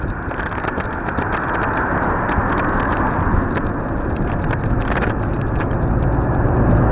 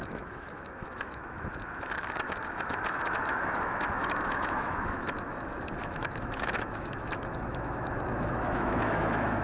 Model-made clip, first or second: second